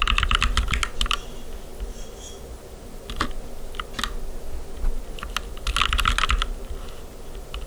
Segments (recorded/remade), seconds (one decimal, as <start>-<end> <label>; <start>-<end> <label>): 0.0-7.7 recorded